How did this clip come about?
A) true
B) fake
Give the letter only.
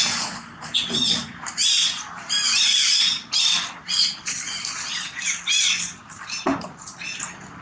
A